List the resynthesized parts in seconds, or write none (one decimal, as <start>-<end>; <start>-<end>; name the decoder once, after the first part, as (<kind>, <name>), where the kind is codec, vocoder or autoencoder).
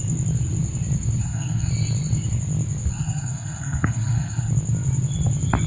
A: 1.2-1.7 (codec, SNAC); 2.9-4.5